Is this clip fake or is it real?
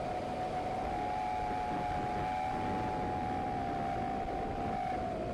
real